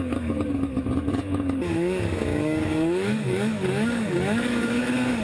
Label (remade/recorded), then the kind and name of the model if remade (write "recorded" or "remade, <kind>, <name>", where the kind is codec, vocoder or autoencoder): remade, codec, DAC